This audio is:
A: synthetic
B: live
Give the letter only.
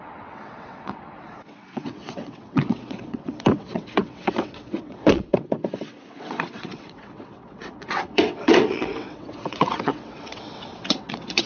A